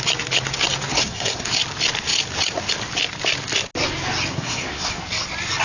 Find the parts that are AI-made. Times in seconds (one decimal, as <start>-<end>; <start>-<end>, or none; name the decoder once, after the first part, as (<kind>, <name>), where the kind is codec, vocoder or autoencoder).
0.9-1.5 (codec, SNAC); 4.3-5.0